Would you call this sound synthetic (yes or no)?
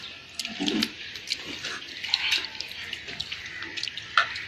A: no